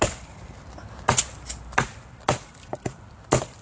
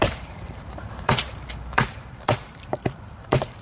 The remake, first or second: second